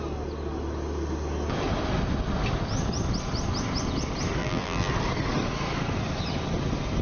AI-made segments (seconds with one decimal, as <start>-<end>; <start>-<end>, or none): 4.4-4.9